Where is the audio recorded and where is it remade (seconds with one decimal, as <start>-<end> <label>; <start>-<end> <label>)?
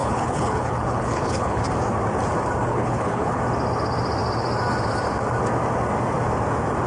0.0-1.6 remade; 1.6-2.7 recorded; 2.7-3.4 remade; 3.4-6.9 recorded